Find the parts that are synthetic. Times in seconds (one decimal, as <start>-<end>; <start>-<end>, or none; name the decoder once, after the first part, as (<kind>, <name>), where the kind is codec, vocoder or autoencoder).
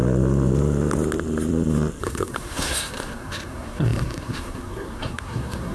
2.0-5.7 (codec, SNAC)